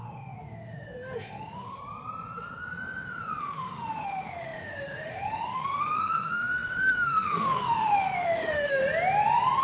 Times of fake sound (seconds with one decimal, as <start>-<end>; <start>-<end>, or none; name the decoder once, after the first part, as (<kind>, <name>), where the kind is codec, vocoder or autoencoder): 0.0-1.8 (autoencoder, DAC-VAE); 3.4-8.8